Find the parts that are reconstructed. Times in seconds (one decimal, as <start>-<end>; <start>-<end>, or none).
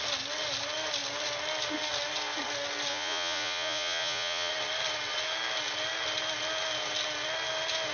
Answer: 2.9-4.5